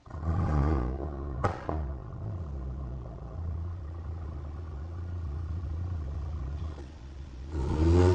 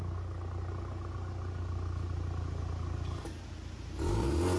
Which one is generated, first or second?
first